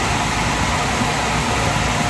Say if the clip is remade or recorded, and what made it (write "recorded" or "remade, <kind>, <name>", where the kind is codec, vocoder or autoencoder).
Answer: recorded